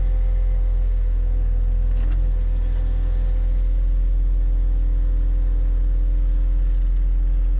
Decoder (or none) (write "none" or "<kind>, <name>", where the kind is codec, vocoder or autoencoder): none